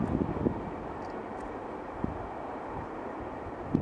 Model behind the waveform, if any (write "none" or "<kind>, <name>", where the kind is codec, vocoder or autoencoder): none